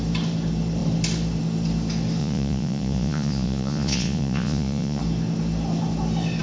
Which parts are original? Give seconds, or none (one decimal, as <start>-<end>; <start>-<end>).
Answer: 0.0-2.2; 5.0-6.4

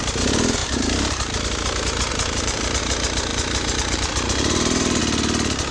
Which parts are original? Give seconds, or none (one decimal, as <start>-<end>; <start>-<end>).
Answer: 0.0-0.6; 1.4-2.1; 2.8-3.3; 5.0-5.7

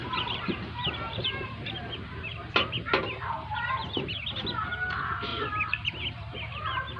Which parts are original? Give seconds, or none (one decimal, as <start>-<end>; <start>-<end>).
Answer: 4.2-5.3

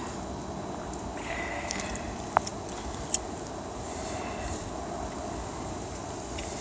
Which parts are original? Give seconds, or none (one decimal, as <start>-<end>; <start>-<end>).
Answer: 0.0-1.2; 1.8-6.6

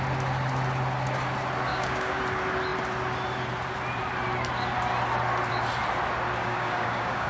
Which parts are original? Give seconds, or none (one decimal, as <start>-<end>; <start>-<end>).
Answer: 0.0-1.7; 2.2-6.4

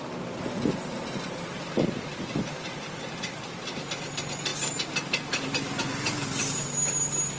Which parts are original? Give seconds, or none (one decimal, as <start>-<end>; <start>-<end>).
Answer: 0.0-7.4